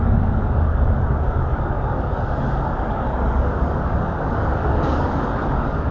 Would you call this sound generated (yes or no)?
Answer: yes